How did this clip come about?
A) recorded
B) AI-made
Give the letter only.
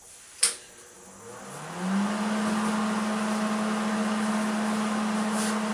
A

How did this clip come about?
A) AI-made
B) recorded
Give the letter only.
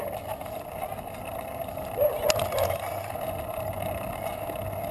B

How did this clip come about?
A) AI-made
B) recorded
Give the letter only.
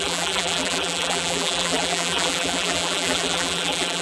A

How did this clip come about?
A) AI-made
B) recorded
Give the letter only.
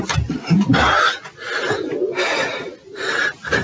B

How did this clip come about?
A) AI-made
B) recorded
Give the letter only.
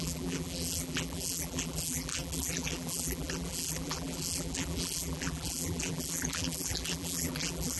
A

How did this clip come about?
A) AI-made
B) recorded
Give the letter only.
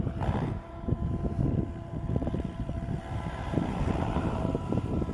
A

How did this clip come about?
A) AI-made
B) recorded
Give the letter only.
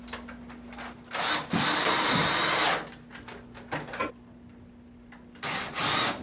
B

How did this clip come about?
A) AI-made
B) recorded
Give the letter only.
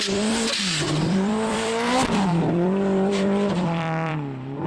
A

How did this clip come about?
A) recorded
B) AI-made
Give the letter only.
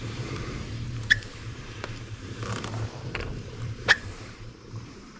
B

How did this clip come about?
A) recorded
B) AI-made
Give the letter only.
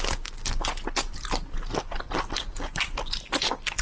A